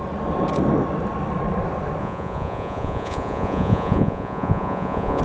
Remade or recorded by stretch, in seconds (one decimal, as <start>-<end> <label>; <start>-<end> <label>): 0.0-2.0 recorded; 2.0-5.2 remade